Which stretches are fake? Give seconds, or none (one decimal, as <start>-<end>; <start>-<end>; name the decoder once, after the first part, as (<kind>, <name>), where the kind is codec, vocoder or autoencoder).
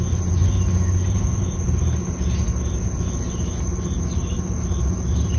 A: none